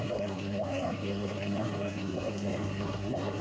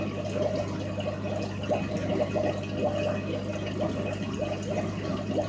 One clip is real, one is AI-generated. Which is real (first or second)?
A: second